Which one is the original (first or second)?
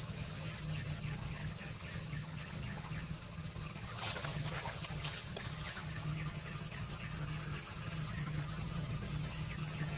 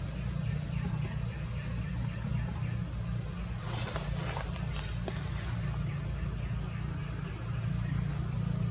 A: second